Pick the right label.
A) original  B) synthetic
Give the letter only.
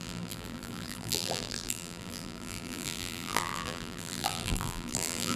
B